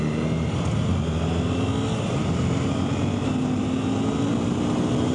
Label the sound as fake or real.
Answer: real